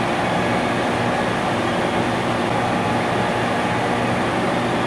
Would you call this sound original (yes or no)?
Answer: yes